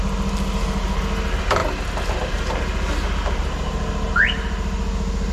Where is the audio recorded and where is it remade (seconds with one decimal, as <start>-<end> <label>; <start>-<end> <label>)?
0.0-5.3 recorded

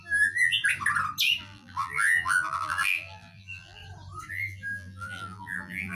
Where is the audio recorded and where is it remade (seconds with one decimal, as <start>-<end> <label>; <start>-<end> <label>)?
0.0-0.6 remade; 0.6-1.4 recorded; 1.4-3.8 remade; 3.8-4.3 recorded; 4.3-5.9 remade